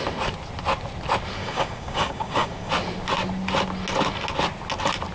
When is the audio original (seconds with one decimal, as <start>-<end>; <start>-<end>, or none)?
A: 0.0-1.4; 2.7-5.1